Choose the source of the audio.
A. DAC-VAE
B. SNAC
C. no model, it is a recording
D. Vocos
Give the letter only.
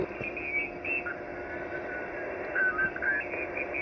C